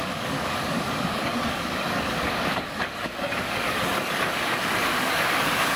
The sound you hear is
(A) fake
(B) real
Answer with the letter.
A